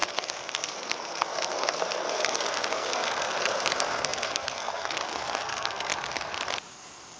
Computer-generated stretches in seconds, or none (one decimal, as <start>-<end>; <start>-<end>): 0.0-5.9; 6.7-7.2

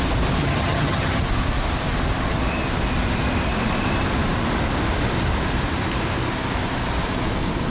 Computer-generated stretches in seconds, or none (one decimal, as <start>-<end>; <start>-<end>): 0.4-1.2

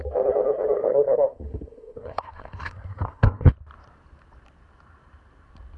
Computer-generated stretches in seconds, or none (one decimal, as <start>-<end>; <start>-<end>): 0.8-3.5

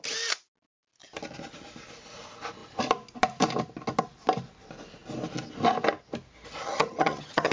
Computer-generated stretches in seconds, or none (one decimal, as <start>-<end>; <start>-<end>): 6.6-7.5

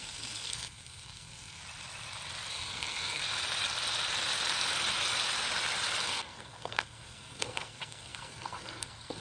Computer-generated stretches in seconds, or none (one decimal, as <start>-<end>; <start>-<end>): 0.0-1.6; 2.5-3.2; 6.0-9.2

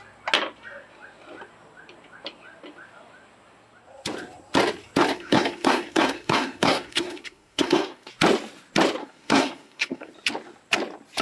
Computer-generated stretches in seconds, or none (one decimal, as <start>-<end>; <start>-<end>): 5.1-8.1; 9.0-10.1

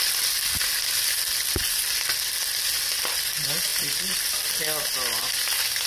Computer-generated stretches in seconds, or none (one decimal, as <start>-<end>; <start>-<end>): none